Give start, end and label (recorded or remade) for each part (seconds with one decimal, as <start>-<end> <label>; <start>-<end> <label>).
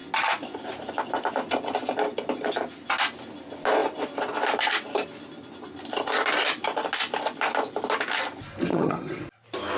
0.0-8.7 recorded; 8.7-9.2 remade; 9.2-9.8 recorded